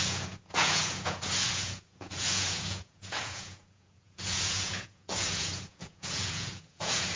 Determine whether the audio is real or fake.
fake